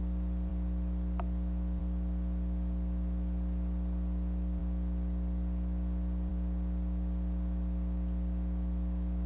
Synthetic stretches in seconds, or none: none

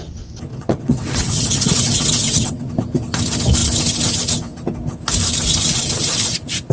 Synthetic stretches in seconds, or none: 0.5-2.7 (vocoder, WaveNeXt)

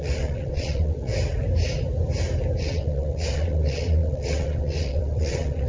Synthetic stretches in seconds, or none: 0.0-1.1 (vocoder, WaveNeXt); 2.6-5.7

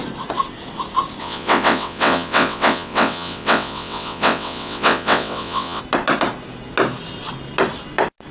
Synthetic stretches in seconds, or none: 1.2-5.8 (vocoder, WaveNeXt)

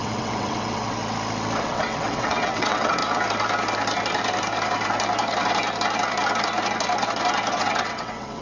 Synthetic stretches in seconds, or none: 0.0-1.0 (vocoder, WaveNeXt); 1.6-3.0; 7.5-8.4

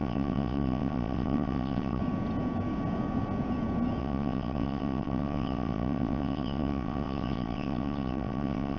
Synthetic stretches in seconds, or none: 0.0-2.0 (vocoder, WaveNeXt); 4.0-8.8